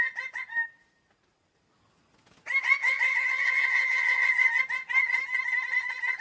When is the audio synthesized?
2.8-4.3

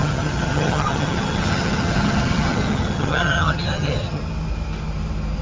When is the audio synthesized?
0.0-4.2

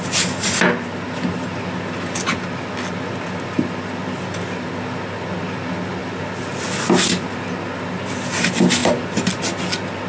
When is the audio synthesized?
none

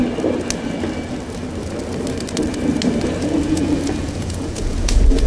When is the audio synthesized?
3.2-5.3

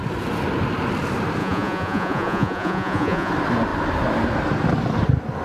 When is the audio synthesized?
1.4-3.3

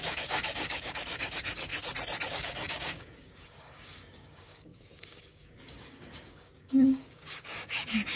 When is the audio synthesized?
0.0-1.7; 2.3-8.2

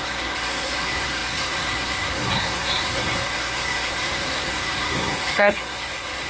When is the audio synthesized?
0.0-6.3

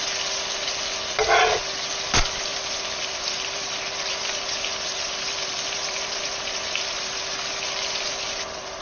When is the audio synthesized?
2.5-7.3